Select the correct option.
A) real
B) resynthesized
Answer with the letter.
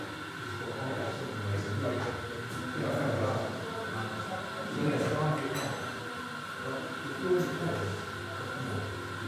A